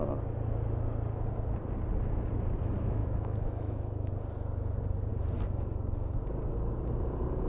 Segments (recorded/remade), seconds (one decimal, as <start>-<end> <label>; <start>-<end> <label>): 0.0-3.0 recorded; 3.0-4.1 remade; 4.1-7.5 recorded